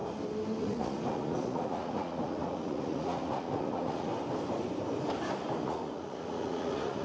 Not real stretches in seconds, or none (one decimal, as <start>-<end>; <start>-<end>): 0.6-4.1; 5.6-7.0